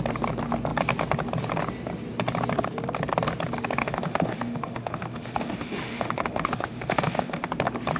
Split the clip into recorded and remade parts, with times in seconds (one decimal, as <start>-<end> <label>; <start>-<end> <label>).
0.0-3.8 recorded; 3.8-7.5 remade; 7.5-8.0 recorded